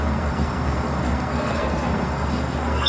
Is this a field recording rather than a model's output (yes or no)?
no